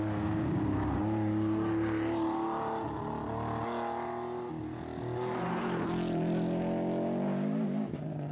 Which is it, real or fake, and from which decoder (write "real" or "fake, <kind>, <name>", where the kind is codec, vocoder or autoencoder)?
real